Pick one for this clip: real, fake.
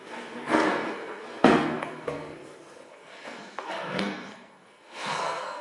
fake